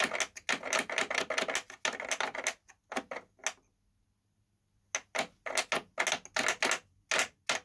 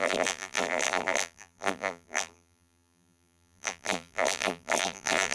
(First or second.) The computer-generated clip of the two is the second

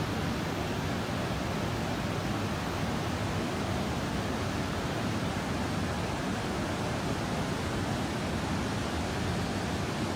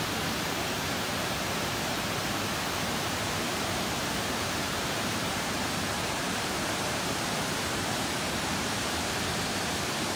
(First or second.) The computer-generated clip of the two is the second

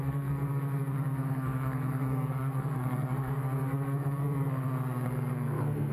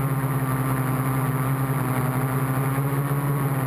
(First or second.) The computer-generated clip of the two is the first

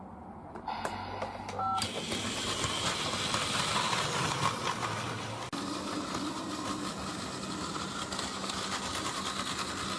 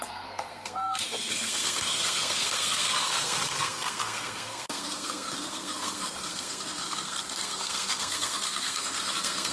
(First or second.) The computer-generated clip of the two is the second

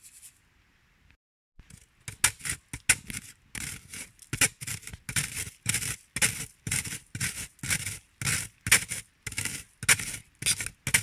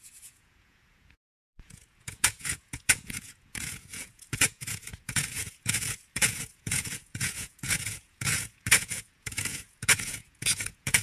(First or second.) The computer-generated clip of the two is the second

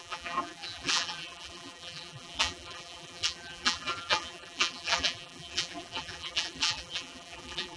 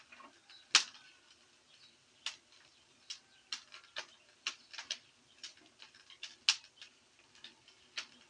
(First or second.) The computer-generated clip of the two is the first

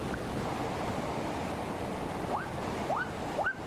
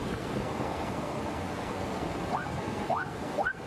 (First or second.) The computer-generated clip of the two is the second